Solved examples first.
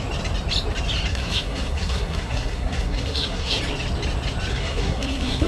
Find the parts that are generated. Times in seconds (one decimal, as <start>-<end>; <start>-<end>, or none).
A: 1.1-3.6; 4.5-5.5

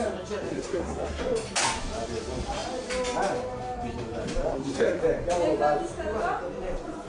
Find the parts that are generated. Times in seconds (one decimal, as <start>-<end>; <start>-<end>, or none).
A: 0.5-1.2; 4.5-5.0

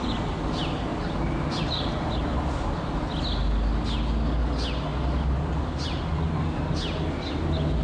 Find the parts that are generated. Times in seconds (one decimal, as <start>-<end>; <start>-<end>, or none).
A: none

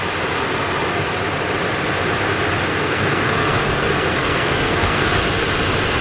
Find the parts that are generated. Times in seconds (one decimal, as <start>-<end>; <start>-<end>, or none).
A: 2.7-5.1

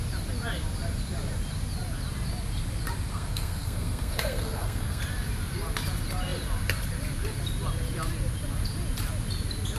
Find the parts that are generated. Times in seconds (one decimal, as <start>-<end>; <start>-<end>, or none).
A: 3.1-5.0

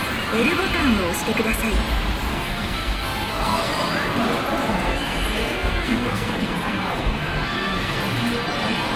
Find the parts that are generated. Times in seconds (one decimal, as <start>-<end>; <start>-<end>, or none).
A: 2.3-3.7; 4.7-8.0

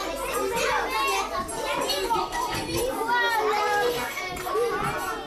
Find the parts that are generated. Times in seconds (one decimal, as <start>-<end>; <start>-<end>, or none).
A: 2.2-2.8; 3.6-4.2

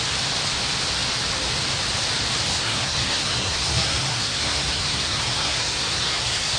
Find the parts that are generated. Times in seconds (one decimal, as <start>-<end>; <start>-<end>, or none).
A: 2.5-6.6